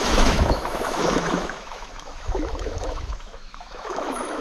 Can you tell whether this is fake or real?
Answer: fake